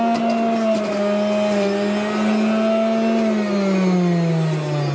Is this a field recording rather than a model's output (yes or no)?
yes